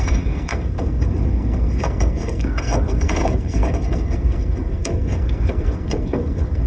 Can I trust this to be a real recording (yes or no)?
no